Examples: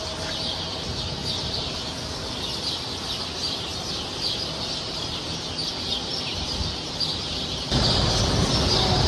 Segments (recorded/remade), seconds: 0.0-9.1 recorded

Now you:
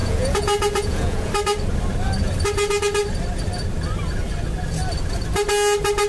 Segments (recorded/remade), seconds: 0.0-1.3 remade; 1.3-6.1 recorded

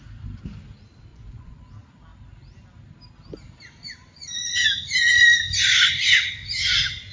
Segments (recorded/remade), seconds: 0.0-1.1 recorded; 1.1-1.7 remade; 1.7-7.1 recorded

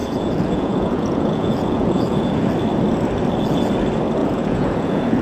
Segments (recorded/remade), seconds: 0.0-2.5 remade; 2.5-4.2 recorded; 4.2-5.2 remade

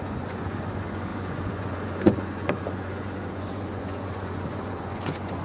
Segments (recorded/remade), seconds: 0.0-5.4 remade